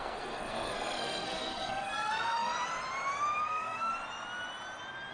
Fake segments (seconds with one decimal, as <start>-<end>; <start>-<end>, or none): 0.0-2.5; 3.4-3.9